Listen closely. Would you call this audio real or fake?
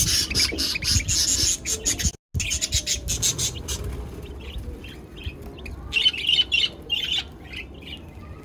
real